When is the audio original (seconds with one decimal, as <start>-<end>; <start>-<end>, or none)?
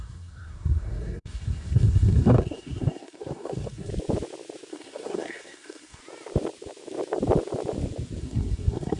3.9-4.7; 6.0-8.2